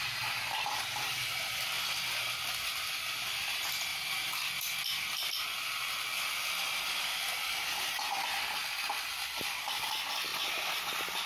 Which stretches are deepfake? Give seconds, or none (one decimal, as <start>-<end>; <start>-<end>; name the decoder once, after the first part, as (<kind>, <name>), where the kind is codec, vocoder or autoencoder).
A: none